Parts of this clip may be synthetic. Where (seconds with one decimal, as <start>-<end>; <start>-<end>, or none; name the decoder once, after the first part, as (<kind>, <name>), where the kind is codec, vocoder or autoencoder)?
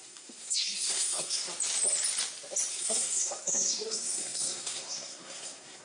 0.0-1.4 (codec, SNAC); 2.7-5.8